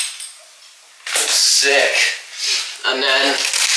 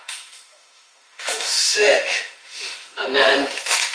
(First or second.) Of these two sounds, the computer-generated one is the second